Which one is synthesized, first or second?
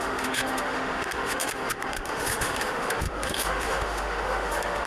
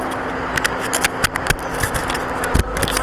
first